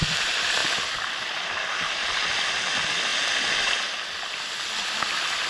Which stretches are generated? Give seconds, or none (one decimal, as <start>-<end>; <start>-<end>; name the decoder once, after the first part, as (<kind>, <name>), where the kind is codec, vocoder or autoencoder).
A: none